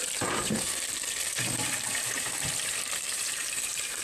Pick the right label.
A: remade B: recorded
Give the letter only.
A